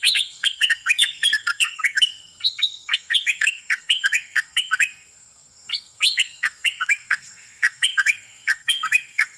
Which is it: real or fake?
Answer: fake